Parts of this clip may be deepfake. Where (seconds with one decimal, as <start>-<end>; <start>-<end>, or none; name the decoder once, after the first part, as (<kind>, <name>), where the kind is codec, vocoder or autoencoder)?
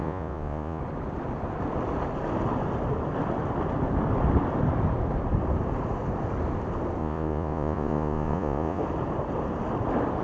0.0-0.8 (vocoder, Vocos); 7.0-8.8